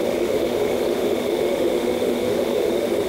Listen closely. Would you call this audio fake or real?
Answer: fake